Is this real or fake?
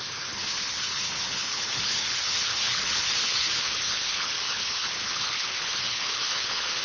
fake